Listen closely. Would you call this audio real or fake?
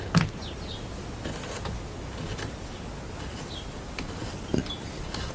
real